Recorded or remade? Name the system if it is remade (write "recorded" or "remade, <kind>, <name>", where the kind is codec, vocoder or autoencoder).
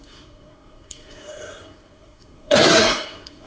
remade, codec, SNAC